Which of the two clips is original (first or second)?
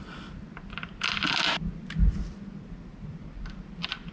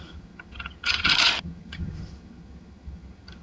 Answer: first